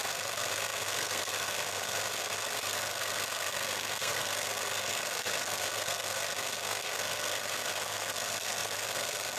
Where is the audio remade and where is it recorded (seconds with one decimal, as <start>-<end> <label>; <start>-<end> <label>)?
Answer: 0.0-9.4 remade